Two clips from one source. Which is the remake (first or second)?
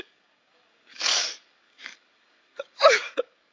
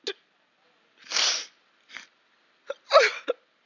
first